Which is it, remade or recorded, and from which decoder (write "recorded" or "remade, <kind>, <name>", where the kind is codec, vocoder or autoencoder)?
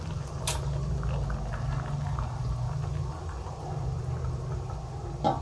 recorded